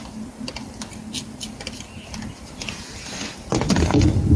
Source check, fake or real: real